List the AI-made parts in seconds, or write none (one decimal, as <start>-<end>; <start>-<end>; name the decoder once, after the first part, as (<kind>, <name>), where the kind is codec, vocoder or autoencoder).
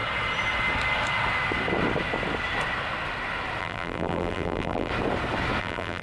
3.6-4.9 (vocoder, BigVGAN v2); 5.6-6.0